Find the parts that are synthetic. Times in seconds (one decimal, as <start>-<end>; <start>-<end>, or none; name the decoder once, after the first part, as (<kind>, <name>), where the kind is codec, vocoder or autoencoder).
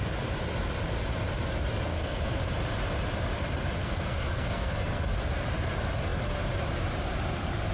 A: 1.9-2.4 (codec, SNAC); 3.8-5.0